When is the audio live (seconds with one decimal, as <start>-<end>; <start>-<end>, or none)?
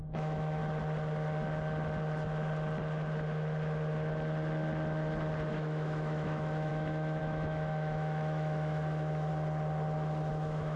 0.6-5.5; 9.3-10.3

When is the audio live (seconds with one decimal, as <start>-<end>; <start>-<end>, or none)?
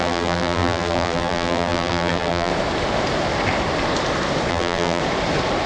2.5-4.5; 5.0-5.7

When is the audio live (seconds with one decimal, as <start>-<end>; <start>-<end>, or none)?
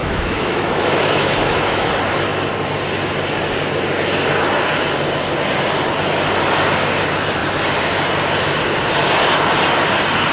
1.9-10.3